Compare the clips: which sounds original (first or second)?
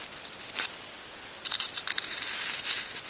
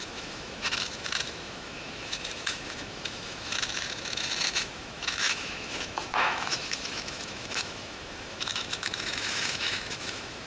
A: first